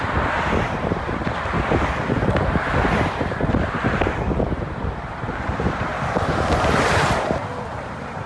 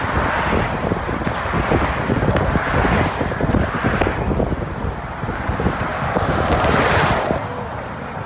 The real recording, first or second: second